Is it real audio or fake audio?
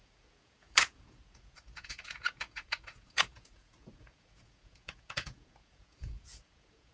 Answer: fake